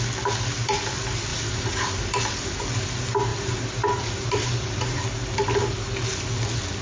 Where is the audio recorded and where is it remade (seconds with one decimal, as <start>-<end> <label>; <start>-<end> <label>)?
0.0-1.3 recorded; 1.3-2.2 remade; 2.2-3.3 recorded; 3.3-5.0 remade; 5.0-6.8 recorded